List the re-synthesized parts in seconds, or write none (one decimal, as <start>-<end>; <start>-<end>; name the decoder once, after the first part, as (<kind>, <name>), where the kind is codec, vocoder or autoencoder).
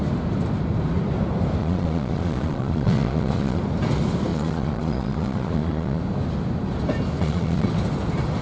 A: 1.6-3.6 (vocoder, Vocos); 4.3-6.0; 7.2-7.7